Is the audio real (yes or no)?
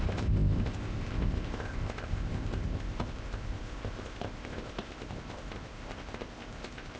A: no